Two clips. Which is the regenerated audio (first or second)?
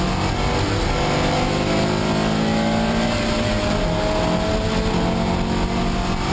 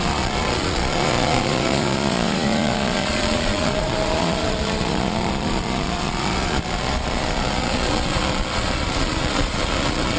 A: second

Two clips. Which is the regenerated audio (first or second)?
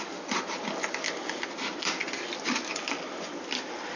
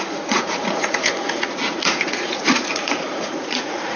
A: second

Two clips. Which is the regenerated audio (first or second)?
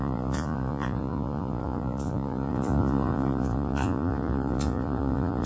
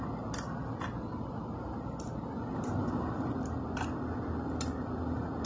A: first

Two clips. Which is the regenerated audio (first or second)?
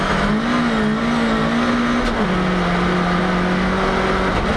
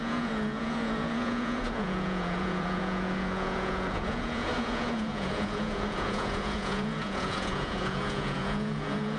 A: second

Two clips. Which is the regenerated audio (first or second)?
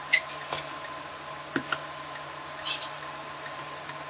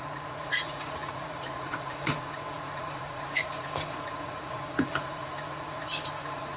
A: second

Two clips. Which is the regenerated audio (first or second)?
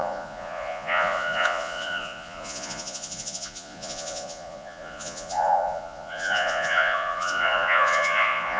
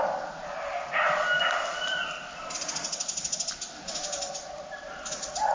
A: first